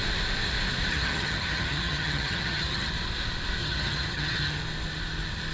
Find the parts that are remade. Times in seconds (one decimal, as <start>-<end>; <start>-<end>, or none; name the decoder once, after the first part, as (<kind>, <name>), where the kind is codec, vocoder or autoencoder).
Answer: 0.9-2.9 (vocoder, HiFi-GAN); 3.6-4.6